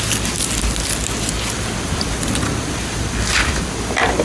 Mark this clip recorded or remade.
recorded